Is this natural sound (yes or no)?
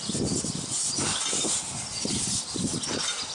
yes